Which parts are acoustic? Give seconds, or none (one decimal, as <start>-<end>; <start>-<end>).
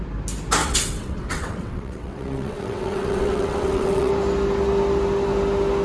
0.0-0.6; 4.1-5.8